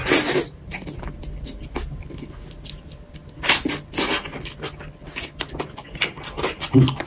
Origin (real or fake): real